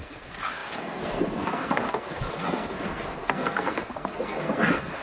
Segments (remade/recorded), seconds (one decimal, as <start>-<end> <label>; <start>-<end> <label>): 0.0-5.0 remade